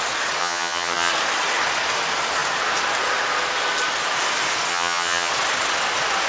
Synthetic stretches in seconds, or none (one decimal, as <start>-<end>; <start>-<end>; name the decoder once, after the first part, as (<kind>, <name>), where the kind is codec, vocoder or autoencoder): 0.4-1.1 (vocoder, HiFi-GAN); 4.7-5.3